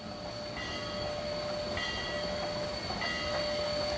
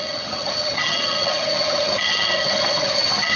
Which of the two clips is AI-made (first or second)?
second